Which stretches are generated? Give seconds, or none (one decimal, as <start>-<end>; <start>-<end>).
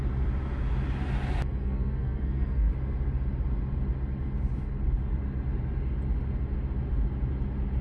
1.6-2.7